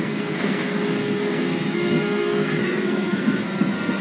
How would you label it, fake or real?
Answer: fake